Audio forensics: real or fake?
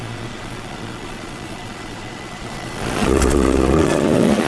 fake